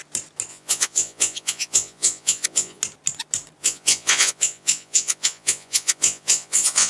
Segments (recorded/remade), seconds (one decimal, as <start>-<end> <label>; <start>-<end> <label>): 0.0-0.5 recorded; 0.5-2.8 remade; 2.8-3.6 recorded; 3.6-6.9 remade